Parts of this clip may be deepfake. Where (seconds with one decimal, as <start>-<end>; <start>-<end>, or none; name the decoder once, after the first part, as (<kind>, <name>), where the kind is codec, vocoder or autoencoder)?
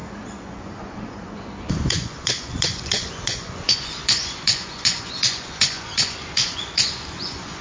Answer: 0.0-7.6 (vocoder, Vocos)